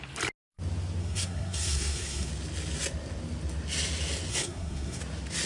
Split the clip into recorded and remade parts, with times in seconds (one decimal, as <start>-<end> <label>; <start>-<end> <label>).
0.0-1.0 recorded; 1.0-2.3 remade; 2.3-4.3 recorded; 4.3-5.0 remade; 5.0-5.5 recorded